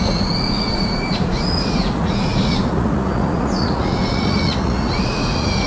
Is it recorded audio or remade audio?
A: remade